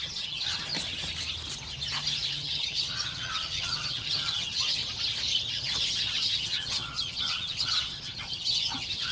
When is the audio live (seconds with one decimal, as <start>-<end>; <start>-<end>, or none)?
0.7-2.3; 4.8-5.5